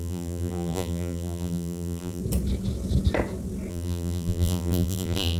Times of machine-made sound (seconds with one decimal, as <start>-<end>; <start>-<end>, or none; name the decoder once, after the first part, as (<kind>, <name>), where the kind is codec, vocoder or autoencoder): 0.0-2.2 (vocoder, BigVGAN v2); 3.7-5.4